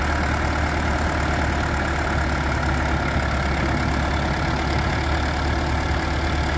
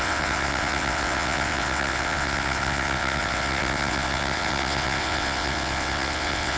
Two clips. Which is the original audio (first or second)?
first